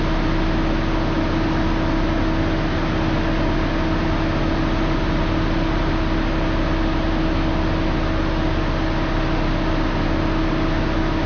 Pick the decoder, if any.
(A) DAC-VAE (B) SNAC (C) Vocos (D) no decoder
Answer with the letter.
D